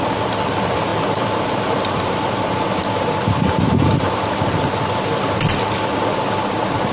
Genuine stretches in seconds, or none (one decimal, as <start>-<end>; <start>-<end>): 0.0-6.9